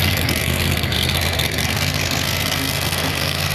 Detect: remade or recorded remade